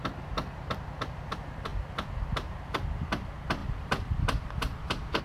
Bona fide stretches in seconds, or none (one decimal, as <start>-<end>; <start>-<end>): 0.0-3.6